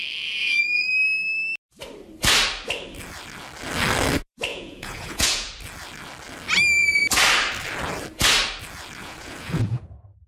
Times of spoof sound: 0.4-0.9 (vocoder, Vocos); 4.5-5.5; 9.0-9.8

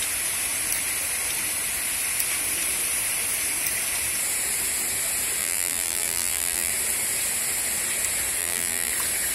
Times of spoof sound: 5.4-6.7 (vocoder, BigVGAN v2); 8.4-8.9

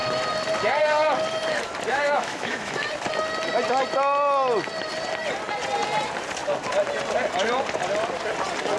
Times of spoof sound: 1.9-2.9 (autoencoder, DAC-VAE)

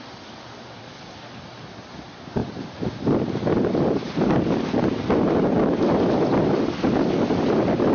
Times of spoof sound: none